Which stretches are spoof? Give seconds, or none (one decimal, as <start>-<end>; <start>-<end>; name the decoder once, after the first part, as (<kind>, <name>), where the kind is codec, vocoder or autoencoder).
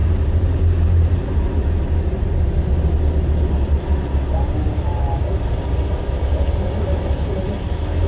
none